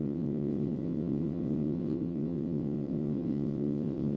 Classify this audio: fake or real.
fake